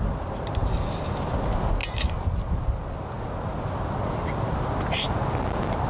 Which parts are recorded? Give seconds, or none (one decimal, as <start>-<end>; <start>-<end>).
0.0-5.9